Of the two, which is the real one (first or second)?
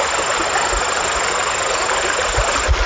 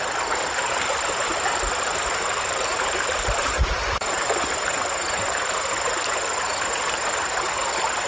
first